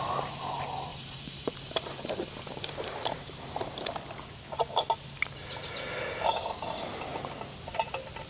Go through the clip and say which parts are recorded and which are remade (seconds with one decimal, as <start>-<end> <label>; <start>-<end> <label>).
0.0-0.9 recorded; 0.9-3.9 remade; 3.9-8.3 recorded